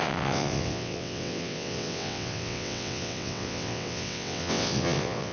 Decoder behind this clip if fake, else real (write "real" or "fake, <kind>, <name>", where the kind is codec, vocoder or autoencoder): fake, vocoder, WaveNeXt